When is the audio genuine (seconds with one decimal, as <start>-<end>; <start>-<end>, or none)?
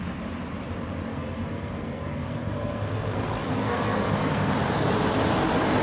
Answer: 0.0-1.1; 4.5-5.8